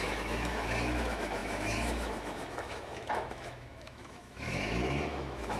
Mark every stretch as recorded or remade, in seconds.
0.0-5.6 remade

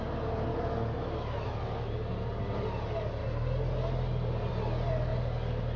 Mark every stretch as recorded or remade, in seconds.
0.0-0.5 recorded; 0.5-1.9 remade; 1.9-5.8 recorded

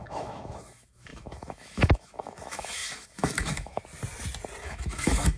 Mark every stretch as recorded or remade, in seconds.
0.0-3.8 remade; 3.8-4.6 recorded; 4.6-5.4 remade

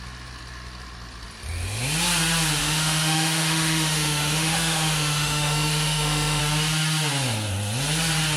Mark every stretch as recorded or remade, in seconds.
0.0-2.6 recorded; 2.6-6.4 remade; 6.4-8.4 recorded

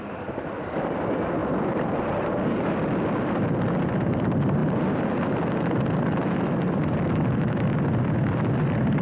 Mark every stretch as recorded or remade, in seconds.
0.0-9.0 recorded